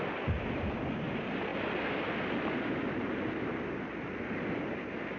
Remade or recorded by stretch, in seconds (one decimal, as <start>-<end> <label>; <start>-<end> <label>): 0.0-5.2 recorded